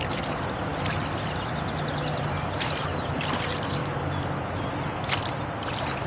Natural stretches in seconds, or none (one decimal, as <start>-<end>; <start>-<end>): 0.0-6.1